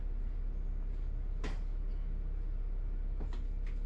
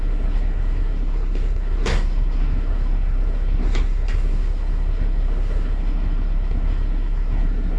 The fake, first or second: second